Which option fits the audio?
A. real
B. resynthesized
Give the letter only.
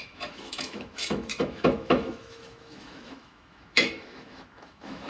B